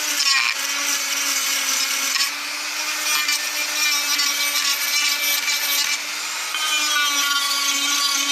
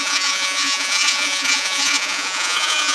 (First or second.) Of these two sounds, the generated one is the second